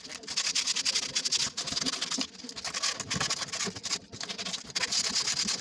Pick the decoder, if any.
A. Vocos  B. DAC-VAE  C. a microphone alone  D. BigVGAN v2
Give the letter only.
C